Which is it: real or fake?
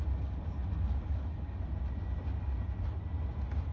real